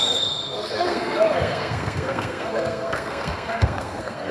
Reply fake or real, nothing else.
fake